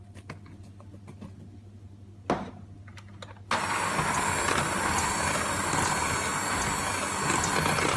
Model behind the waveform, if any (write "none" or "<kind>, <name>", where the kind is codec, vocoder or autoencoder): none